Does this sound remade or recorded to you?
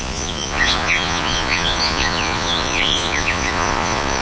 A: remade